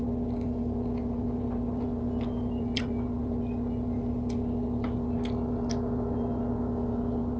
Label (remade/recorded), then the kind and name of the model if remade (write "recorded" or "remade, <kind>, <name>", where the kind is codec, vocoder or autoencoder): recorded